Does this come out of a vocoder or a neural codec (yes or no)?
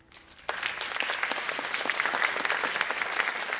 no